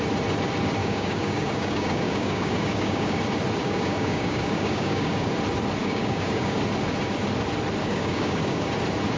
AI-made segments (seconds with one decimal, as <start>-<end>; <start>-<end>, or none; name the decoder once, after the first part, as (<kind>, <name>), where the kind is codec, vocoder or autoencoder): 0.8-3.2 (codec, DAC); 3.6-5.3; 5.8-6.6; 7.8-8.7